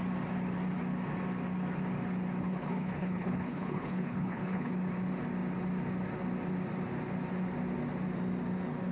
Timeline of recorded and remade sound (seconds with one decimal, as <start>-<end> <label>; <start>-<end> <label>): 0.0-2.4 recorded; 2.4-4.7 remade; 4.7-8.9 recorded